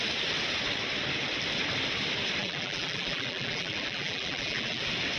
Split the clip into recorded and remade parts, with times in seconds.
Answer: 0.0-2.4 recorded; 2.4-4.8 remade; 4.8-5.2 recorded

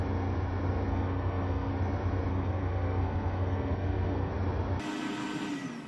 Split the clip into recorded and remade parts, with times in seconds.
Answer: 0.0-0.9 recorded; 0.9-1.7 remade; 1.7-2.3 recorded; 2.3-4.3 remade; 4.3-5.9 recorded

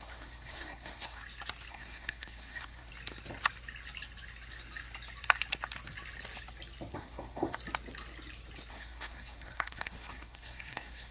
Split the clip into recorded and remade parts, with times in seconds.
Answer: 0.0-1.2 remade; 1.2-1.7 recorded; 1.7-2.9 remade; 2.9-6.9 recorded; 6.9-7.6 remade; 7.6-8.7 recorded; 8.7-11.1 remade

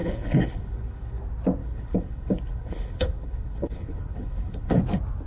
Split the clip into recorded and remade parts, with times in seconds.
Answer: 0.0-1.2 remade; 1.2-1.6 recorded; 1.6-4.8 remade; 4.8-5.3 recorded

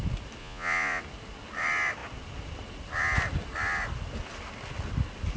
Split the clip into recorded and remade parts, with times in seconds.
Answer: 0.0-0.4 recorded; 0.4-1.0 remade; 1.0-5.4 recorded

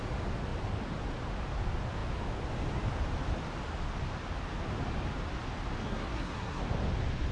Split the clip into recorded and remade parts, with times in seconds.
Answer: 0.0-5.8 recorded; 5.8-6.6 remade; 6.6-7.3 recorded